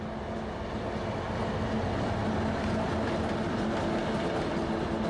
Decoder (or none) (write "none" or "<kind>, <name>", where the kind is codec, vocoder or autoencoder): none